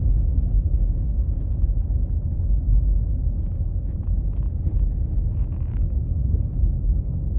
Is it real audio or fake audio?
real